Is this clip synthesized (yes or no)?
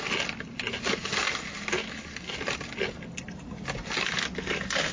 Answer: no